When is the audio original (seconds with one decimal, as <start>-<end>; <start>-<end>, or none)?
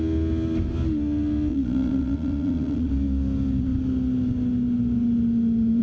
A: 0.0-1.5; 2.9-5.8